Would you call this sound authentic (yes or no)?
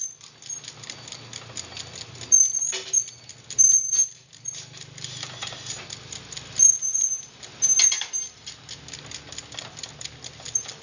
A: yes